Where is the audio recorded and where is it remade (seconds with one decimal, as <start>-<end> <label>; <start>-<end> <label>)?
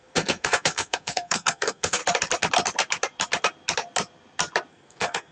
0.0-2.0 remade; 2.0-4.7 recorded; 4.7-5.3 remade